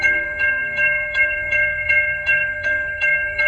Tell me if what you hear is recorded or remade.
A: remade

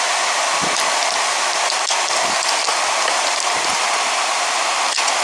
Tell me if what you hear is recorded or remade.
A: recorded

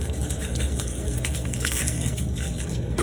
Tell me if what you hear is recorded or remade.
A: remade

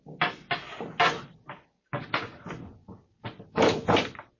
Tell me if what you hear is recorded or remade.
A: recorded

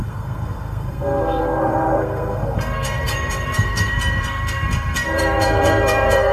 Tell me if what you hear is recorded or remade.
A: remade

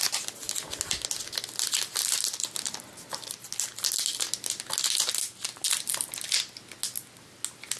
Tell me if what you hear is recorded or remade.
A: recorded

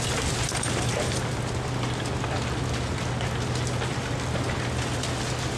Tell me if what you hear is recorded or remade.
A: recorded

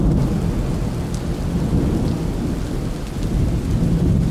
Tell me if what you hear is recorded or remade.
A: recorded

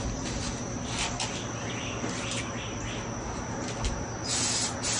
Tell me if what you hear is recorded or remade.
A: recorded